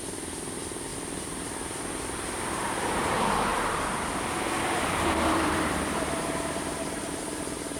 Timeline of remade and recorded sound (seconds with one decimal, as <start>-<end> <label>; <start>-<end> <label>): 0.0-0.9 recorded; 0.9-3.0 remade; 3.0-3.5 recorded; 3.5-7.2 remade; 7.2-7.8 recorded